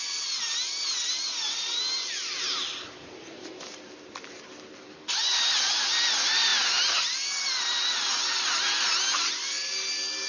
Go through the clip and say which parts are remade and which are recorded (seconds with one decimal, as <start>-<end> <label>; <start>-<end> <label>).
0.0-10.3 recorded